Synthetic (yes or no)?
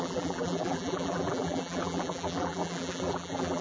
yes